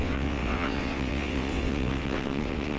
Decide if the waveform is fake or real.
fake